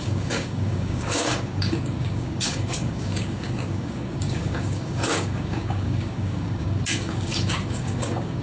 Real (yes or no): no